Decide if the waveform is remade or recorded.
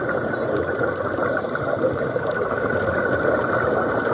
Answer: recorded